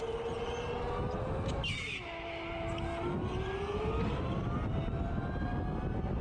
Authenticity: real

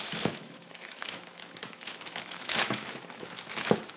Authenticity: fake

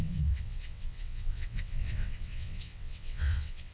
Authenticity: fake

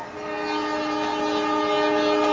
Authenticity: real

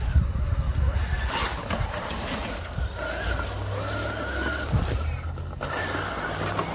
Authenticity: real